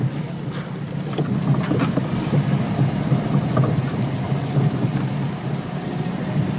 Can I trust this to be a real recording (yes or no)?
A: yes